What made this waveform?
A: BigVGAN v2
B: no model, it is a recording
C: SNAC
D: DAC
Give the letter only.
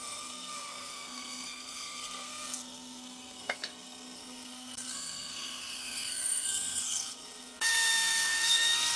C